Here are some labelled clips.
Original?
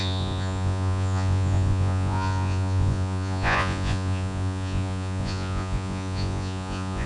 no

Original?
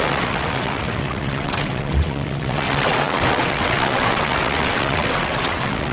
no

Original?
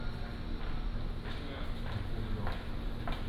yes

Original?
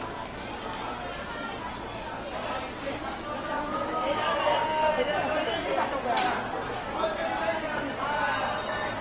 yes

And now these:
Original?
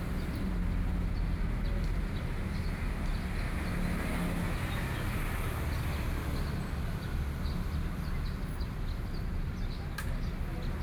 yes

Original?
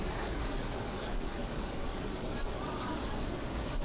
no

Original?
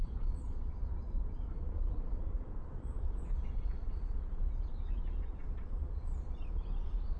no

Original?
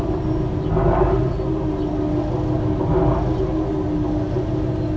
yes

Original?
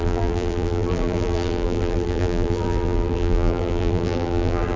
no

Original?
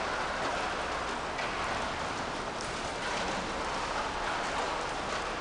yes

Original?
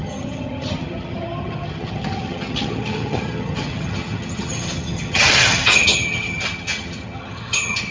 no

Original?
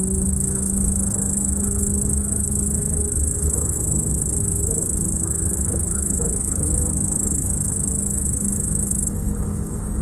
no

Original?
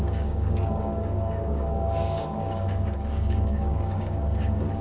no